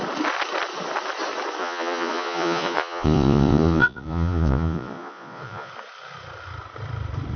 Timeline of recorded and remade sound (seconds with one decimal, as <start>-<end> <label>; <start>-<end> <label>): 0.0-1.6 recorded; 1.6-5.7 remade; 5.7-7.4 recorded